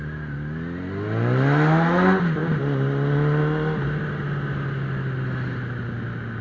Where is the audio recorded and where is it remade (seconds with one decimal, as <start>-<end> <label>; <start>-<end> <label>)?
0.0-6.4 recorded